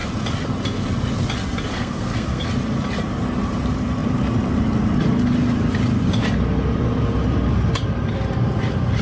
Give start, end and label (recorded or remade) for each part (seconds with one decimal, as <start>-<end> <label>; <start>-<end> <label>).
0.0-1.7 recorded; 1.7-2.4 remade; 2.4-9.0 recorded